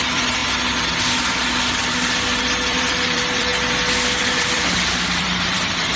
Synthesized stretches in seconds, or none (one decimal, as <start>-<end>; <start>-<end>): 0.0-0.4; 2.4-3.5; 4.2-6.0